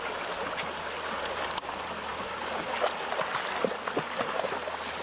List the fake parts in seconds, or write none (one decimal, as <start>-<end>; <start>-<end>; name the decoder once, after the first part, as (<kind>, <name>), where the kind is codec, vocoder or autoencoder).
2.1-2.7 (codec, DAC)